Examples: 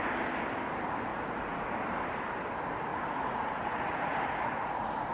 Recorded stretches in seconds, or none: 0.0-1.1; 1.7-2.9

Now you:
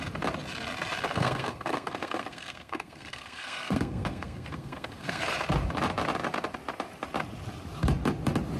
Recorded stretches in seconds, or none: 0.0-1.1; 5.2-8.6

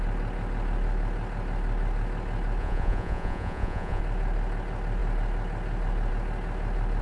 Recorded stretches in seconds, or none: 0.0-2.6; 4.0-7.0